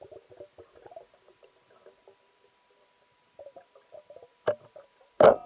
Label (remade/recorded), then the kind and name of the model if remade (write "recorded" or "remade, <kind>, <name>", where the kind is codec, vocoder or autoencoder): recorded